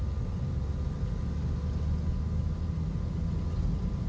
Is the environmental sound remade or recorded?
recorded